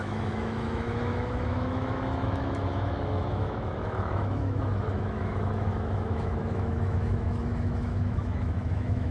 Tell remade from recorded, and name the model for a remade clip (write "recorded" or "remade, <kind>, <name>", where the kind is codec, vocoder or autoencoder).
remade, autoencoder, DAC-VAE